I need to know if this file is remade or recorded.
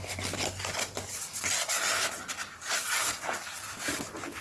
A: recorded